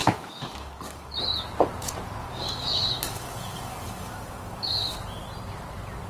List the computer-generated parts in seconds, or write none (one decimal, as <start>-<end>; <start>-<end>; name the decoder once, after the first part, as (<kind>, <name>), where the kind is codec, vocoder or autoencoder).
0.0-1.1 (codec, DAC); 2.2-4.9